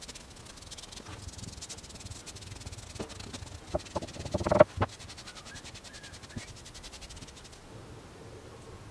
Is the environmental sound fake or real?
real